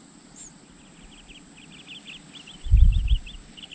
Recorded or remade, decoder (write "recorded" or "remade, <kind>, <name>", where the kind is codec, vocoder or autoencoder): recorded